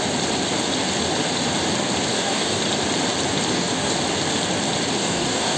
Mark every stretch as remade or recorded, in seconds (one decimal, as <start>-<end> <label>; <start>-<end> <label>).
0.0-2.1 recorded; 2.1-2.6 remade; 2.6-3.5 recorded; 3.5-4.0 remade; 4.0-5.0 recorded; 5.0-5.6 remade